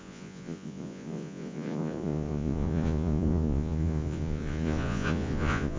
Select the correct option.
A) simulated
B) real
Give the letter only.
A